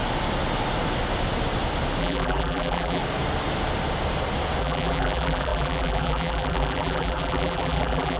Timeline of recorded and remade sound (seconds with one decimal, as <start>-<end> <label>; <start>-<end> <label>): 0.0-2.0 recorded; 2.0-3.0 remade; 3.0-4.6 recorded; 4.6-8.2 remade